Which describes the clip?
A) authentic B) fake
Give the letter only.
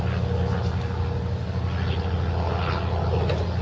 A